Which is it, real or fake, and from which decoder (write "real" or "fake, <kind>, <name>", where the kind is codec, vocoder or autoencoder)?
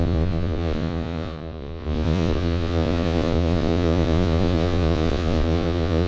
fake, vocoder, Vocos